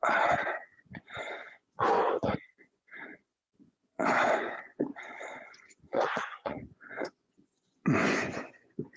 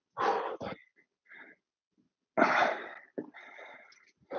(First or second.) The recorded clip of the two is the second